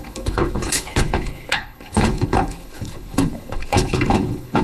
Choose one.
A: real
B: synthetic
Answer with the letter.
B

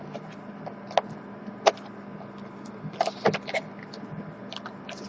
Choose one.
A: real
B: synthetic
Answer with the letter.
A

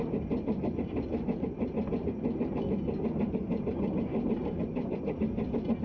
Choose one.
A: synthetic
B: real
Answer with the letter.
B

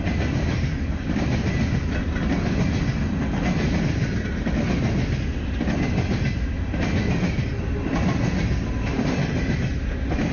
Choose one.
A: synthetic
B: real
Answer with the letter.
B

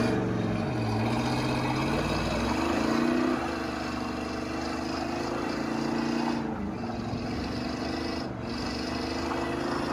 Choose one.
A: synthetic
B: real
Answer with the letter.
B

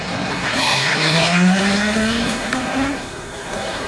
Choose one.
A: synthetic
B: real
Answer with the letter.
A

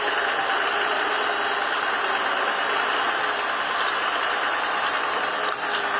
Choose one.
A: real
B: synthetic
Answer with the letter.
A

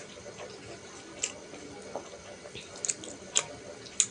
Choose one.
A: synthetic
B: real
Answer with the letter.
B